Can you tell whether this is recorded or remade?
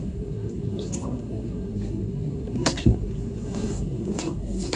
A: remade